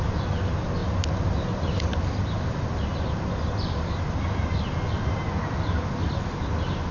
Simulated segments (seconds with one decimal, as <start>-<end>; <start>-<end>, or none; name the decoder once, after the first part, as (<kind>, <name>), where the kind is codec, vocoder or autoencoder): none